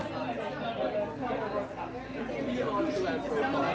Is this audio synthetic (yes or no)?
no